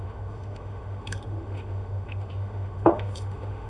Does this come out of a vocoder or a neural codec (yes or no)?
yes